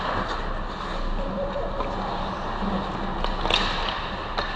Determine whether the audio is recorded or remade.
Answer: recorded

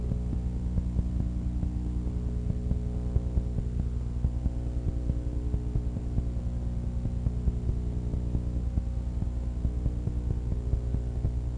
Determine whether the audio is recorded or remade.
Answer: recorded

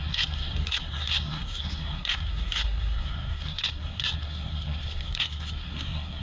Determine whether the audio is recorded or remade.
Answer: remade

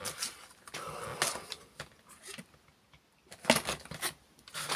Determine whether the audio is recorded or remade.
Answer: recorded